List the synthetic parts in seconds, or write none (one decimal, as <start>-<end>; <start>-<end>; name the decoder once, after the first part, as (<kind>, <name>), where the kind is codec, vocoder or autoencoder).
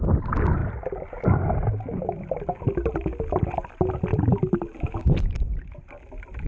4.1-4.8 (vocoder, BigVGAN v2)